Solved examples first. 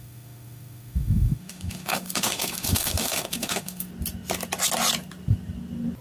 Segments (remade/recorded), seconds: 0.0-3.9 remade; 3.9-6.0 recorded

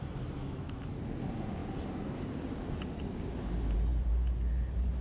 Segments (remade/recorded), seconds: 0.0-0.4 recorded; 0.4-1.0 remade; 1.0-5.0 recorded

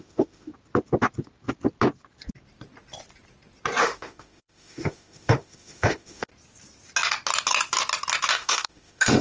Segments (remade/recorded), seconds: 0.0-0.5 remade; 0.5-3.8 recorded; 3.8-6.3 remade; 6.3-8.3 recorded; 8.3-9.2 remade

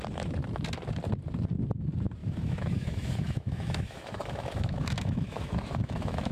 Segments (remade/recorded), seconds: 0.0-2.2 recorded; 2.2-6.3 remade

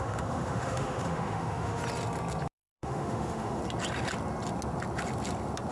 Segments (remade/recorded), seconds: 0.0-1.8 remade; 1.8-2.5 recorded; 2.5-3.6 remade; 3.6-5.7 recorded